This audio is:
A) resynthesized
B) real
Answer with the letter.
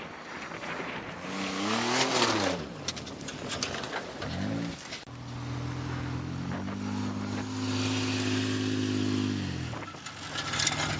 B